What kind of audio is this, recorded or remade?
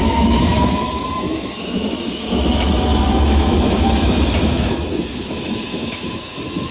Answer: remade